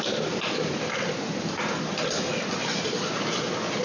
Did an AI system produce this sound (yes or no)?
no